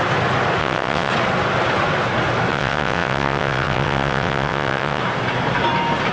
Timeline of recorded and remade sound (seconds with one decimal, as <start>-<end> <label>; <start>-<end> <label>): 0.0-0.6 recorded; 0.6-1.1 remade; 1.1-2.5 recorded; 2.5-5.0 remade; 5.0-6.1 recorded